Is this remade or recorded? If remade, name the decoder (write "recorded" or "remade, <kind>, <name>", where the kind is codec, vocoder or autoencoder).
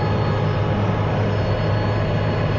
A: recorded